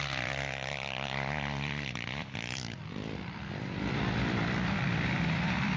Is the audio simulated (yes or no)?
yes